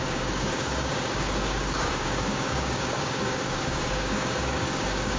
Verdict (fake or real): fake